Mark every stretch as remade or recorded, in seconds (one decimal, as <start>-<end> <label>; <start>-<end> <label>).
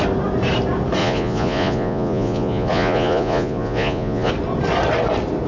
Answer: 0.0-1.0 recorded; 1.0-4.3 remade; 4.3-5.5 recorded